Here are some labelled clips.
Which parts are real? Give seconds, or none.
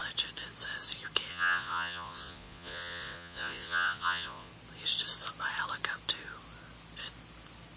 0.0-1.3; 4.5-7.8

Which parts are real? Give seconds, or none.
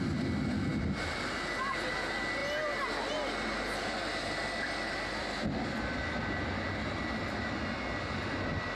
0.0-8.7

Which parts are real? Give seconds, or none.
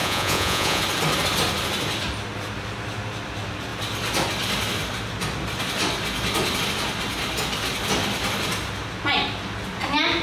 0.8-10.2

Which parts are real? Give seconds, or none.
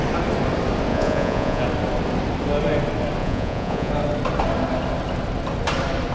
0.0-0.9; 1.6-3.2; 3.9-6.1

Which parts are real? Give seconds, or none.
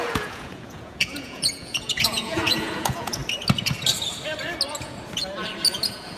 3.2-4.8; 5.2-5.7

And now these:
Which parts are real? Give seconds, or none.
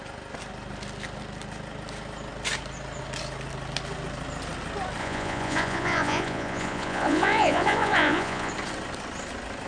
0.0-5.0; 8.5-9.7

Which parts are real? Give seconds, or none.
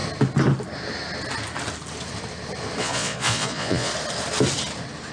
0.0-2.8; 3.9-5.1